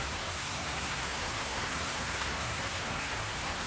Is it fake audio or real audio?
fake